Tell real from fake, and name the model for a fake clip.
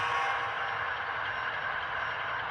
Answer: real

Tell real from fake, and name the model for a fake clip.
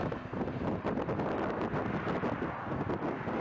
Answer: real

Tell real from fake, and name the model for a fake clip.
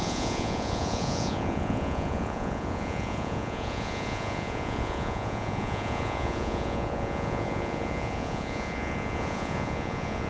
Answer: fake, vocoder, Vocos